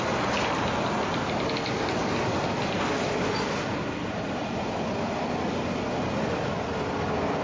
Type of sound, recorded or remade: recorded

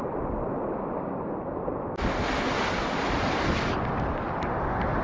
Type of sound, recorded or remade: recorded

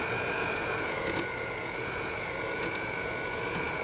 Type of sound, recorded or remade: remade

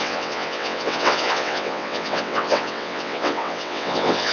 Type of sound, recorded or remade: remade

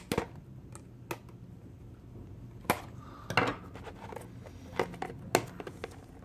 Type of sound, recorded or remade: recorded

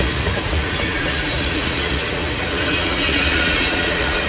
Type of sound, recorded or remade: remade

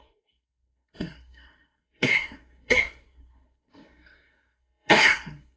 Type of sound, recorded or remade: remade